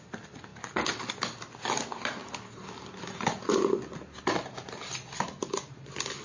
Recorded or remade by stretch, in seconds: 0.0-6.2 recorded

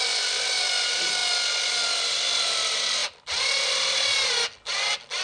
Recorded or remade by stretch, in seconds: 0.0-5.2 recorded

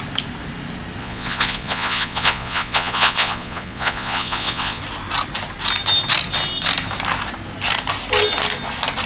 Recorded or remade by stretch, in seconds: 0.0-1.0 recorded; 1.0-4.8 remade; 4.8-9.1 recorded

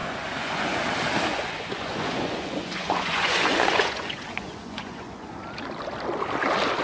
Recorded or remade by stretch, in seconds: 0.0-0.8 remade; 0.8-1.3 recorded; 1.3-5.4 remade; 5.4-6.8 recorded

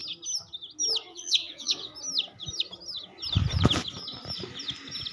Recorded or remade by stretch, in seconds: 0.0-1.1 recorded; 1.1-1.9 remade; 1.9-5.1 recorded

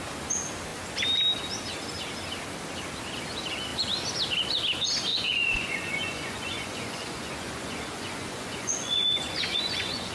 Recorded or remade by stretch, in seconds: 0.0-5.1 recorded; 5.1-10.1 remade